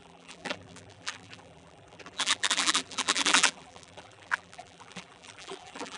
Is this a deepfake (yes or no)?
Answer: yes